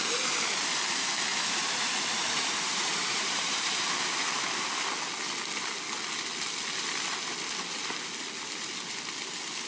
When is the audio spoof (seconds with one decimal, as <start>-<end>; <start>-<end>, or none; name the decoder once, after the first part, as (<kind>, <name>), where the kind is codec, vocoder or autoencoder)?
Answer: 1.3-3.8 (vocoder, BigVGAN v2)